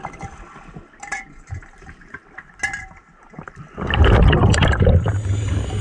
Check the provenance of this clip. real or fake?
real